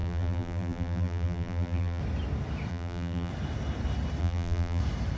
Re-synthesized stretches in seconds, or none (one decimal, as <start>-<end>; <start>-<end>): 0.0-2.0; 2.7-3.3; 4.2-4.8